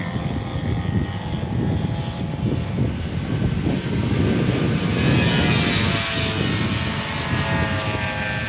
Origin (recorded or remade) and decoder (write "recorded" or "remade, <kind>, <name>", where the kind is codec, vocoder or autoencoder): recorded